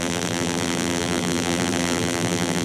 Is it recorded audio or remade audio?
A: remade